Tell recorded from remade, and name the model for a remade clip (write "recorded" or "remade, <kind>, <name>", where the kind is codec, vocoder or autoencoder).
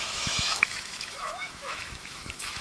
remade, autoencoder, DAC-VAE